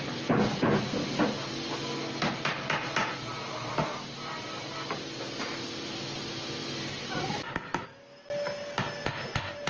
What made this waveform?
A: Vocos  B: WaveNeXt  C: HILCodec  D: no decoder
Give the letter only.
D